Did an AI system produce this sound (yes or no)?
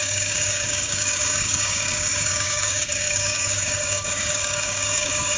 yes